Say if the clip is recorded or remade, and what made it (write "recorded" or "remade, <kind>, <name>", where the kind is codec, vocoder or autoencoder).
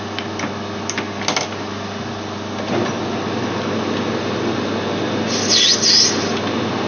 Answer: recorded